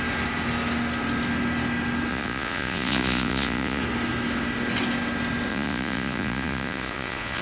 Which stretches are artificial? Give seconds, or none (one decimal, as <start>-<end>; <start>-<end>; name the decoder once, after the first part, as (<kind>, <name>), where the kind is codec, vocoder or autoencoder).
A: 2.1-3.8 (vocoder, Vocos); 5.5-7.4